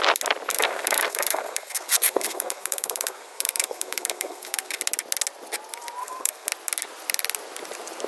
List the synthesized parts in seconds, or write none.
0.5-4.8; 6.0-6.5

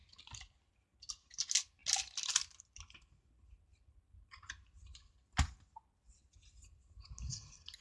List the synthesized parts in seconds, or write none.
none

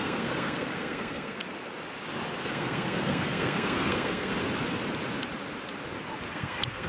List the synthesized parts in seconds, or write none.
0.0-1.4; 2.4-4.3; 6.3-6.9

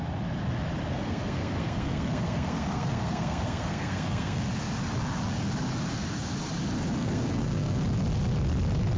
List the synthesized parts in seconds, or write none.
0.9-4.4; 7.0-7.8

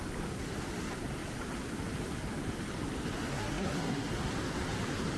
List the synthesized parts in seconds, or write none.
3.3-4.1